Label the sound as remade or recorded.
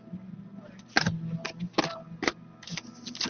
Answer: recorded